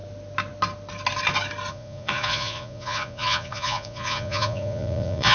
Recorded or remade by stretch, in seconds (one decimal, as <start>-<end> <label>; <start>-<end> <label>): 0.0-1.7 recorded; 1.7-5.3 remade